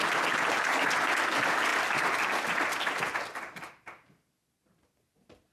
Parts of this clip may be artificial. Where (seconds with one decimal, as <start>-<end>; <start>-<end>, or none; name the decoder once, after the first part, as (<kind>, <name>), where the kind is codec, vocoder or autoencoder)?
none